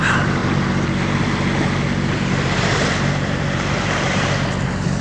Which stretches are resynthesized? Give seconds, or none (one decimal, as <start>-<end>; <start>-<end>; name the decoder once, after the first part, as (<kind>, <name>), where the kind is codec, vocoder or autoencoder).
0.0-0.4 (vocoder, BigVGAN v2); 2.1-5.0